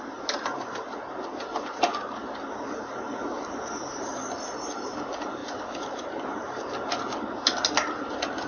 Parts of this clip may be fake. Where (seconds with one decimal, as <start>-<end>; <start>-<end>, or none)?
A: 3.2-4.2; 5.4-6.6